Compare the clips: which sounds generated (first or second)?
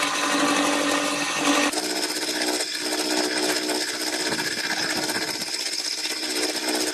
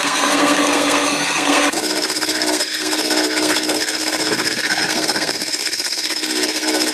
second